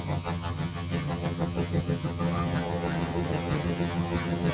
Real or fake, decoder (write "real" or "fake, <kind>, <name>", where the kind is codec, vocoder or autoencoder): fake, vocoder, HiFi-GAN